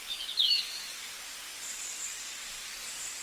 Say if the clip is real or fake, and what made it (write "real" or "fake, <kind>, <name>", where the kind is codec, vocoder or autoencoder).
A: fake, codec, DAC